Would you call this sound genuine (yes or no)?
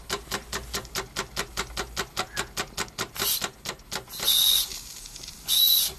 yes